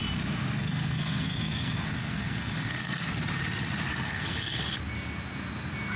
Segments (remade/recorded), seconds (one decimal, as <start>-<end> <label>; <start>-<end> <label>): 0.0-0.6 recorded; 0.6-3.1 remade; 3.1-3.9 recorded; 3.9-4.8 remade; 4.8-6.0 recorded